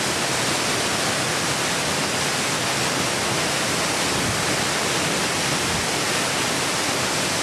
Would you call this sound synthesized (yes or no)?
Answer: no